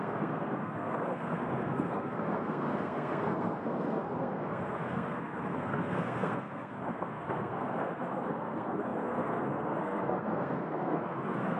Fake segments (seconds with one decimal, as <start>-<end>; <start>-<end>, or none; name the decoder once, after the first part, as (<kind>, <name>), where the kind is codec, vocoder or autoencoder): 0.0-11.6 (codec, SNAC)